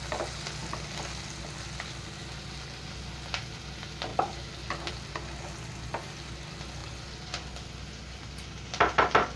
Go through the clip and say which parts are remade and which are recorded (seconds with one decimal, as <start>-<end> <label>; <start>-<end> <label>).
0.0-9.4 recorded